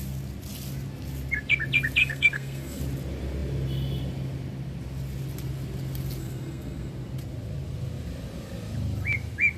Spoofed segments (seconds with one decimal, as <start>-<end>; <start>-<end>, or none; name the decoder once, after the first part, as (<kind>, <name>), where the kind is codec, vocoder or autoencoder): 2.0-2.8 (codec, SNAC); 6.2-6.9